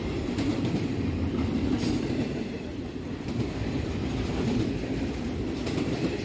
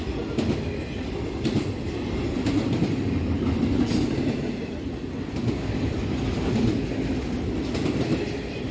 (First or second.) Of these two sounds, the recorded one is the second